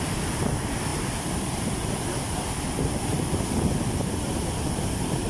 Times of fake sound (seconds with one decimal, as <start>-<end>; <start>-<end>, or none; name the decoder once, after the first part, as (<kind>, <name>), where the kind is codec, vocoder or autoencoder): 0.9-4.1 (vocoder, BigVGAN v2)